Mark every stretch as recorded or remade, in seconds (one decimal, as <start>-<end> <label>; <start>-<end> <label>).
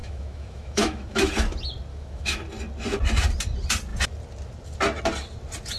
0.0-1.3 remade; 1.3-1.9 recorded; 1.9-2.4 remade; 2.4-5.8 recorded